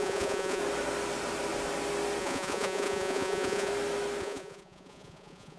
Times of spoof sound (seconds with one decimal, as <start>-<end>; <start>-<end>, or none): 0.0-0.6; 2.2-3.7; 4.2-5.6